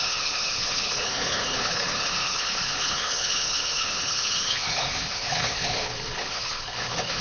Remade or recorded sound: remade